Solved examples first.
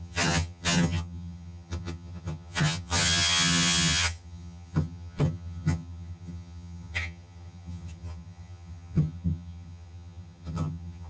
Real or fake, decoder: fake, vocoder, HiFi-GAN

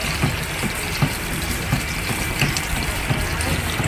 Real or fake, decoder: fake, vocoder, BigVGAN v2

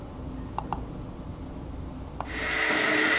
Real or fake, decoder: real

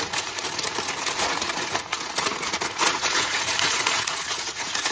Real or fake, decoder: fake, vocoder, Vocos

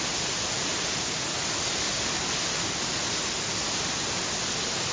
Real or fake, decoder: real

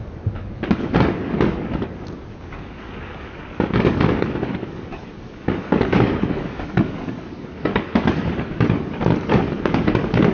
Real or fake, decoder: fake, codec, DAC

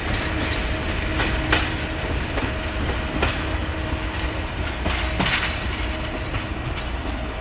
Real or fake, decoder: real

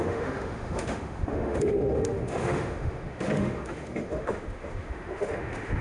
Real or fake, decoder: fake, autoencoder, DAC-VAE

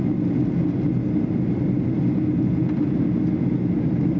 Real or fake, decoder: real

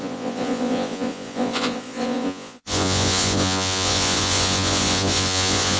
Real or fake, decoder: fake, vocoder, Vocos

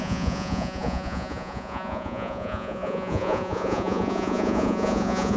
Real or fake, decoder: fake, vocoder, Vocos